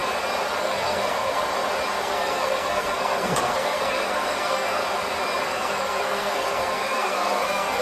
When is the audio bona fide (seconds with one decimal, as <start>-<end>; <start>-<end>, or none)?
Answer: 0.0-0.6; 1.4-2.0; 4.8-5.4